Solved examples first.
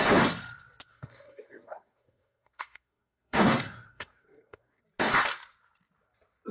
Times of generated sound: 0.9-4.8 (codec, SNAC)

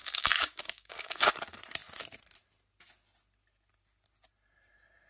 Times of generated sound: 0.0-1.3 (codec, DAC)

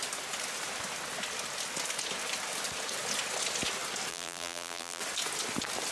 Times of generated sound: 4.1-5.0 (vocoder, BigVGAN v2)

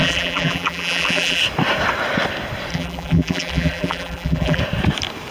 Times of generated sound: 0.0-1.4 (vocoder, BigVGAN v2); 2.7-4.6